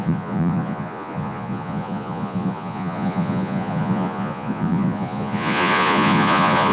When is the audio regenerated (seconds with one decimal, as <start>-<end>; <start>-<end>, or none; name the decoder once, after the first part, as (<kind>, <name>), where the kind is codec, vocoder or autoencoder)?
0.0-6.7 (vocoder, Vocos)